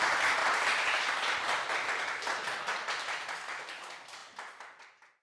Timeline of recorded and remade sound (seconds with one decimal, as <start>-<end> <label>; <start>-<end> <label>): 0.0-5.2 recorded